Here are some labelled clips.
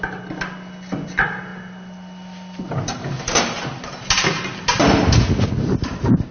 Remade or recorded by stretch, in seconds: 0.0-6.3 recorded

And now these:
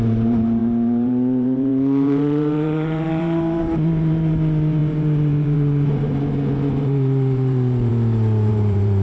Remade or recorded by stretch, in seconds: 0.0-7.9 remade; 7.9-8.5 recorded; 8.5-9.0 remade

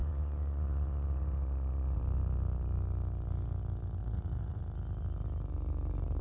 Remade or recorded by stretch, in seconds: 0.0-2.0 remade; 2.0-4.0 recorded; 4.0-4.6 remade; 4.6-6.2 recorded

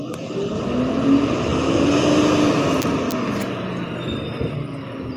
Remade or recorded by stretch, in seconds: 0.0-5.2 recorded

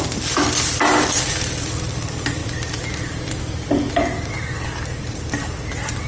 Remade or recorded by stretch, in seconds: 0.0-6.1 recorded

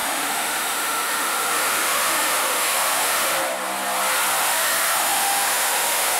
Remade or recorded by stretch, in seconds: 0.0-3.3 remade; 3.3-4.4 recorded; 4.4-6.2 remade

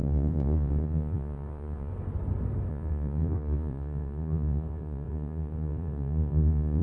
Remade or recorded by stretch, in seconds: 0.0-1.9 remade; 1.9-2.7 recorded; 2.7-6.8 remade

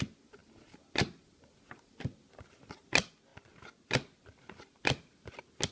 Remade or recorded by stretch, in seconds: 0.0-5.7 recorded